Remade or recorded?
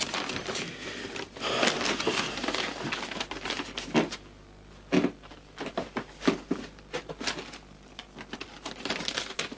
recorded